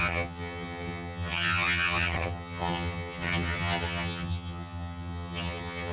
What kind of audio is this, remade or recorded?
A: remade